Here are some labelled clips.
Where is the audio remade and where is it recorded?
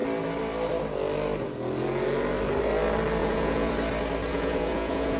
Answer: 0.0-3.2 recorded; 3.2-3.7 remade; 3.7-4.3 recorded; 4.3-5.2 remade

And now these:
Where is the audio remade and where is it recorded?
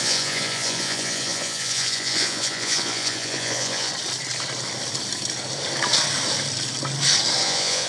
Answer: 0.0-3.9 remade; 3.9-7.4 recorded; 7.4-7.9 remade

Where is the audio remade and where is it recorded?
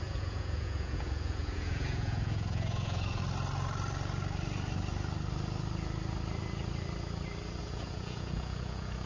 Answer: 0.0-3.2 remade; 3.2-7.6 recorded; 7.6-9.1 remade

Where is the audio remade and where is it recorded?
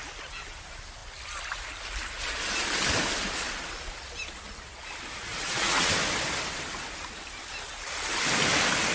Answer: 0.0-5.3 recorded; 5.3-5.9 remade; 5.9-8.9 recorded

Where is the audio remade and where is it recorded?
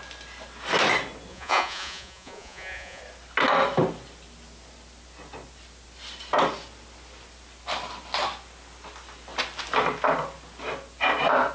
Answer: 0.0-1.3 recorded; 1.3-3.0 remade; 3.0-11.5 recorded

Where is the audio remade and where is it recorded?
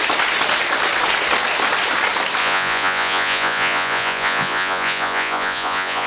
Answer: 0.0-2.4 recorded; 2.4-6.1 remade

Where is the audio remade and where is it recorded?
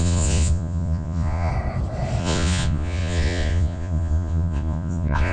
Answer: 0.0-1.5 remade; 1.5-2.2 recorded; 2.2-5.3 remade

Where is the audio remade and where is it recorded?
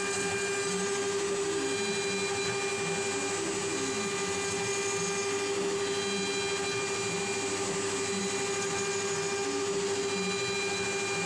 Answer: 0.0-11.3 recorded